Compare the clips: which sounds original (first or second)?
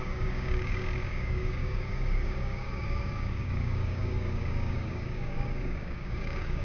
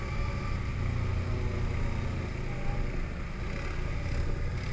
second